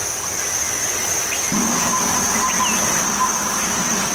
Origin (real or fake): real